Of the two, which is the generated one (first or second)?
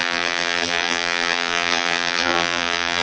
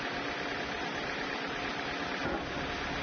first